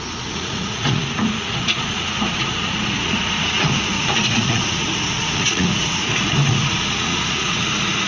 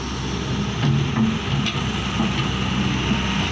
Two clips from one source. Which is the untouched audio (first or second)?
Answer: second